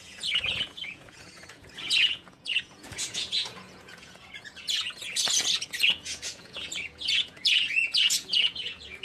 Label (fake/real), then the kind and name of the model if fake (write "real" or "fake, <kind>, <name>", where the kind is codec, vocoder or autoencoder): fake, vocoder, Vocos